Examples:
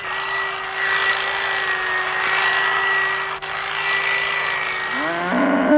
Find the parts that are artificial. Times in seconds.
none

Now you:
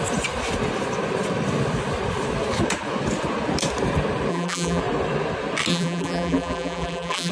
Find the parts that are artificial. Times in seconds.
4.3-4.8; 5.7-7.3

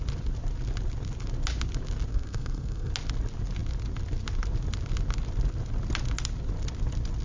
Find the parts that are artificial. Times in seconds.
2.1-2.9

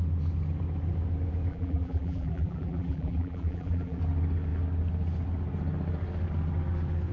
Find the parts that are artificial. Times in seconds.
1.5-4.0